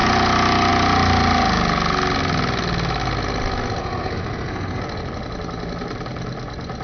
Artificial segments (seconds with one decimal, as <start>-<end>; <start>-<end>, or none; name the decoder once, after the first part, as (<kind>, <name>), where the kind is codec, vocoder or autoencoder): 3.8-4.8 (codec, SNAC)